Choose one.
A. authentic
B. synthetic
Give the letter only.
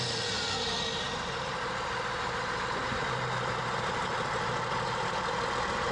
A